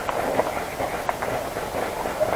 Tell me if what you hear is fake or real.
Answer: real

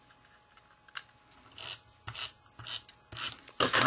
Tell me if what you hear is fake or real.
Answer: real